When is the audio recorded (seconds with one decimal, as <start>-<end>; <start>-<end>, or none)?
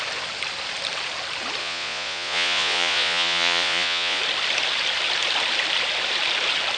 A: 0.0-1.6; 4.2-6.8